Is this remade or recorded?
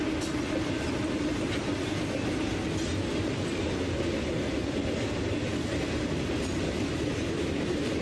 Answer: recorded